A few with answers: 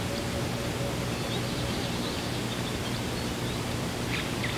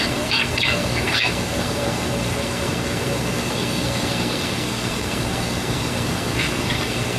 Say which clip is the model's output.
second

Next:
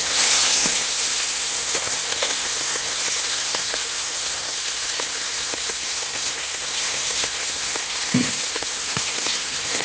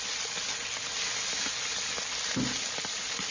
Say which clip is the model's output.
first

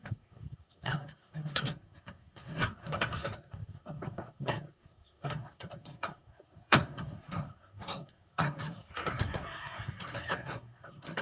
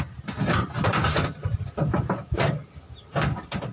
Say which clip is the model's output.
first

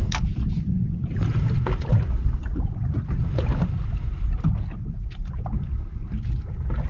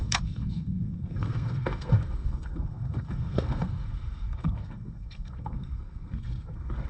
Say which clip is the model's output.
second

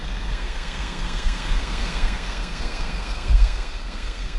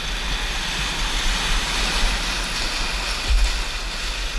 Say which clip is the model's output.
first